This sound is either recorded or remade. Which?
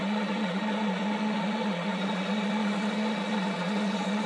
remade